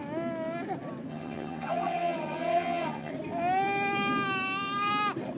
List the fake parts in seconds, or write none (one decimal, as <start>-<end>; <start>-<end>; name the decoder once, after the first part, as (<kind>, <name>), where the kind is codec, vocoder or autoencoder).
1.1-3.1 (vocoder, HiFi-GAN)